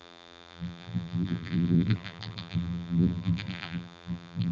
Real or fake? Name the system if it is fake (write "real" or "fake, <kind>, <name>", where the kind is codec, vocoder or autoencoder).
fake, vocoder, BigVGAN v2